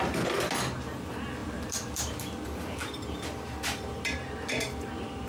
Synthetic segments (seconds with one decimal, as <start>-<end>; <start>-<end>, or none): 1.4-4.6